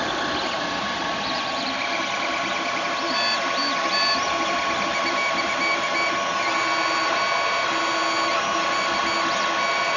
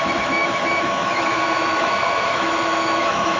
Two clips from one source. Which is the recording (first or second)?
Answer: first